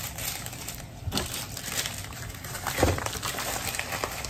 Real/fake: fake